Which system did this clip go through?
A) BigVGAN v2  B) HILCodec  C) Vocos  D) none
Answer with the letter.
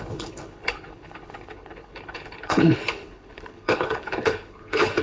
B